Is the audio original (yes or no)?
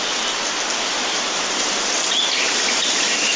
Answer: yes